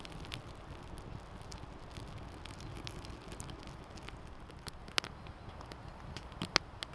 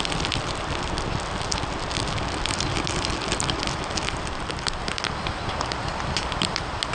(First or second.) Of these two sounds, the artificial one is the second